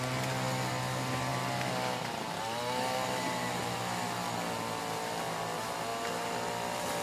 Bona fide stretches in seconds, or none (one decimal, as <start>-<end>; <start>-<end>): 0.0-7.0